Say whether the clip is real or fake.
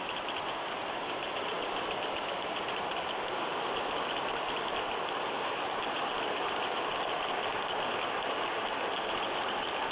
real